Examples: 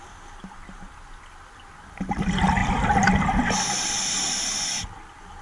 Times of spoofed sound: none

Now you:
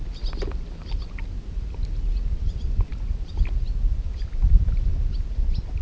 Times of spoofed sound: none

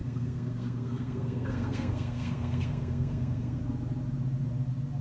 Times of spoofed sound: 0.0-3.6 (codec, SNAC)

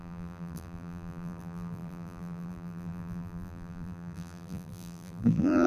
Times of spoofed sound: 0.0-5.7 (vocoder, BigVGAN v2)

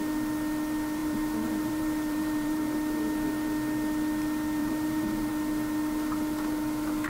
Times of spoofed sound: 1.0-2.6 (vocoder, BigVGAN v2); 4.6-5.3

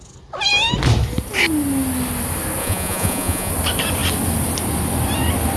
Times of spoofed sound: 2.6-3.5 (vocoder, Vocos)

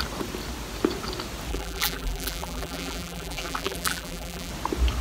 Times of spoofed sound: 1.5-4.5 (vocoder, BigVGAN v2)

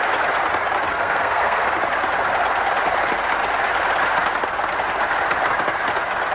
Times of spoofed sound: 0.9-1.8 (codec, SNAC)